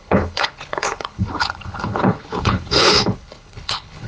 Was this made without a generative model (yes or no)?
no